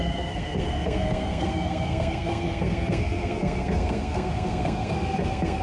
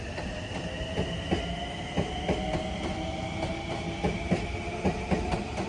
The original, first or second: second